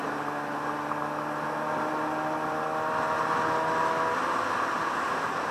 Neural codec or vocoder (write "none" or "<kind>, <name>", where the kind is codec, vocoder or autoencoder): none